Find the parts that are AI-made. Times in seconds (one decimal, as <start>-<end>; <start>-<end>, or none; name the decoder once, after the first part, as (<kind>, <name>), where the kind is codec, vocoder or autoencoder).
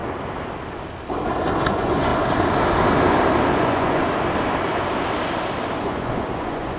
1.7-2.1 (vocoder, Vocos); 3.5-4.0; 5.8-6.8